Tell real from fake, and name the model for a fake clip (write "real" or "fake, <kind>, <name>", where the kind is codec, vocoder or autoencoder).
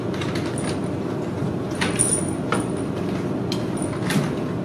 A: real